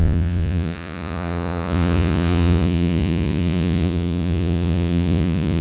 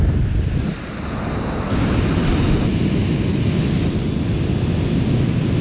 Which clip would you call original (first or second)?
second